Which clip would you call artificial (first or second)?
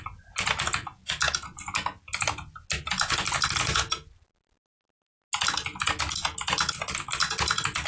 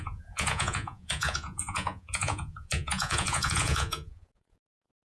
second